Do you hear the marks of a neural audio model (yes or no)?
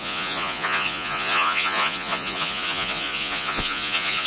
yes